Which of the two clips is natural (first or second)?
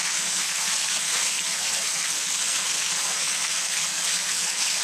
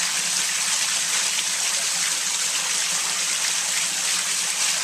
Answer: second